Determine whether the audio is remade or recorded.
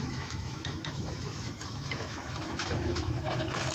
remade